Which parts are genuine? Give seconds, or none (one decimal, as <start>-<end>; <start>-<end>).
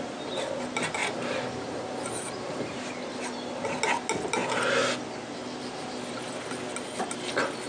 0.0-1.0; 2.9-7.7